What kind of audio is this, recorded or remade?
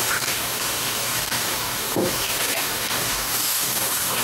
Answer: remade